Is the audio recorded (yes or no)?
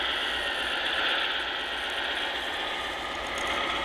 yes